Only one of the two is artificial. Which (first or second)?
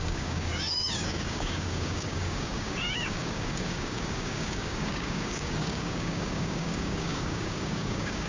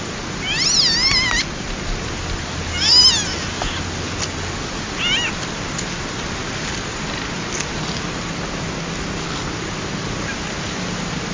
first